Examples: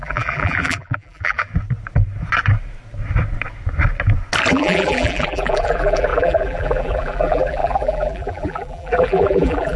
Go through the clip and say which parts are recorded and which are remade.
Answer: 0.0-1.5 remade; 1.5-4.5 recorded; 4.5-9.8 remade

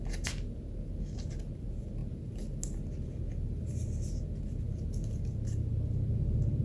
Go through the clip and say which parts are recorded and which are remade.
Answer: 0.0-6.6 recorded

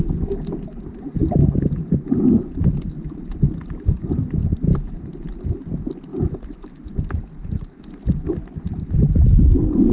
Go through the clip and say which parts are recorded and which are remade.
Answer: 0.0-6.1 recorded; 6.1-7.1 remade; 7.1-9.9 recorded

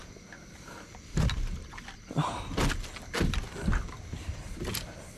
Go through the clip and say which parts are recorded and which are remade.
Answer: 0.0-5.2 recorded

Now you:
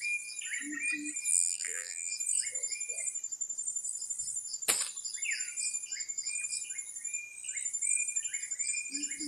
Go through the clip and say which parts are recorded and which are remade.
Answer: 0.0-1.3 recorded; 1.3-2.1 remade; 2.1-9.3 recorded